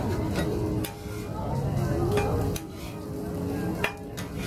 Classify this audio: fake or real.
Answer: real